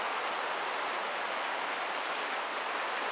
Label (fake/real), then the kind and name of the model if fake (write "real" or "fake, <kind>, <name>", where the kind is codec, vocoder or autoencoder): real